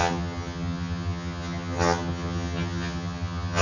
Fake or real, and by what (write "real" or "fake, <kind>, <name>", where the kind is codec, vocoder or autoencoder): fake, vocoder, HiFi-GAN